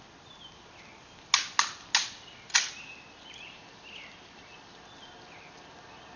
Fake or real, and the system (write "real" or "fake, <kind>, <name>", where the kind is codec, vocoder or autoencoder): real